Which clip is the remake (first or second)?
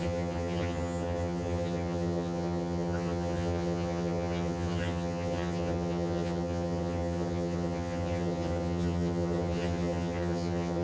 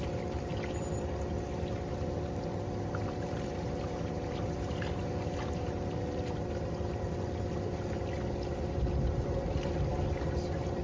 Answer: first